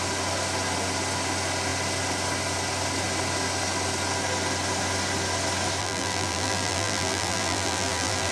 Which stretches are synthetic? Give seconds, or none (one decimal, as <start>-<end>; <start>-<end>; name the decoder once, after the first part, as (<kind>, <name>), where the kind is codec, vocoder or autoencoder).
5.8-8.3 (vocoder, BigVGAN v2)